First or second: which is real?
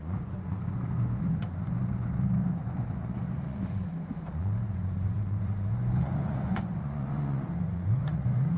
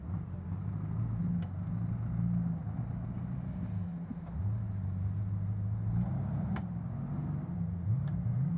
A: second